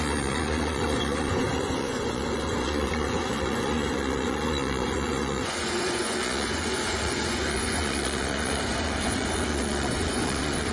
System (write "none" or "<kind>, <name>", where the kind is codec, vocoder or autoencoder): vocoder, Vocos